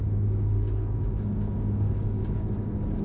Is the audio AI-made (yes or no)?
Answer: yes